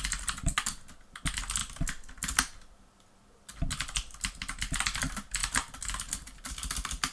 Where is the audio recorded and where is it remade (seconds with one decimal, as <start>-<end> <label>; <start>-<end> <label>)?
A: 0.0-7.1 recorded